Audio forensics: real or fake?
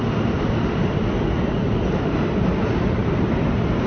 real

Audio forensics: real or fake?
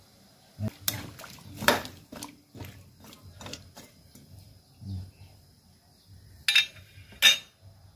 real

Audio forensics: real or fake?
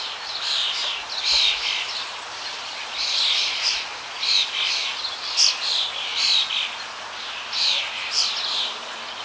real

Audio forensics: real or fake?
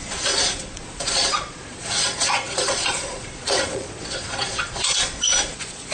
fake